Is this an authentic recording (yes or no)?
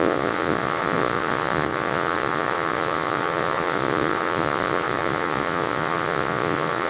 no